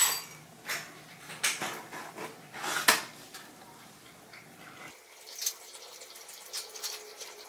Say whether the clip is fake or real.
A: real